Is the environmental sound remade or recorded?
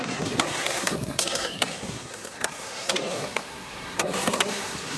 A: remade